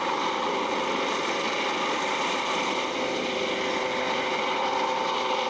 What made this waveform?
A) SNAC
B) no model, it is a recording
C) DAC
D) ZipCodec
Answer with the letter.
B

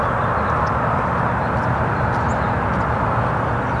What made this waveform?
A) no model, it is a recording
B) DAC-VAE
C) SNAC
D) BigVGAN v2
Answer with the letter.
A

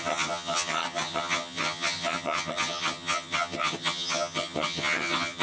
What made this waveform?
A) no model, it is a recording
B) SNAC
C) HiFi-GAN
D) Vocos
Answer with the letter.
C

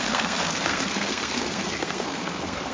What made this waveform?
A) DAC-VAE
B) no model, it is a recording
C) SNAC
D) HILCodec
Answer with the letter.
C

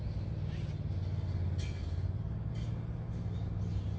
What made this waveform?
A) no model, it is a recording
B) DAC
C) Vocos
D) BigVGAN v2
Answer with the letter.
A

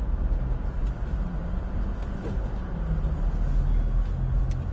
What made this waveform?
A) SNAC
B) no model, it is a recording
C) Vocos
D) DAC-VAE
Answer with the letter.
B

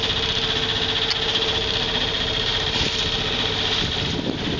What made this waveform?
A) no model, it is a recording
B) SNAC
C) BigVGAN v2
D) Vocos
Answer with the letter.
A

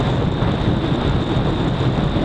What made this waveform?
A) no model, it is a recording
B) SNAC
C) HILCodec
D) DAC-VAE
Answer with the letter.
A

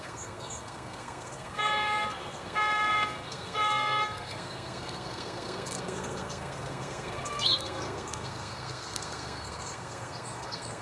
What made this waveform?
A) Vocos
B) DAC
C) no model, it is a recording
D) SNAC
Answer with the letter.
D